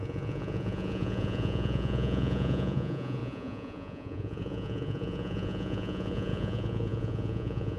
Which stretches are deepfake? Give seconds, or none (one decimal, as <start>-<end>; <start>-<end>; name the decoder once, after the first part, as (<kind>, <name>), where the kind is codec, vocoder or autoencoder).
0.0-7.8 (vocoder, Vocos)